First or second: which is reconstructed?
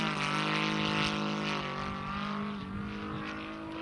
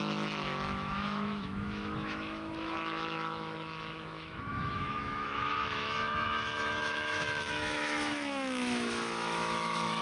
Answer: second